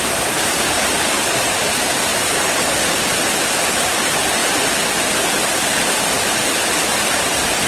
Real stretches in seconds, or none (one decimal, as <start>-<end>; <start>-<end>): 2.1-2.8; 4.4-6.9